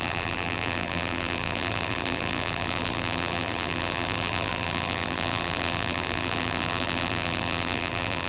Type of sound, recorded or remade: remade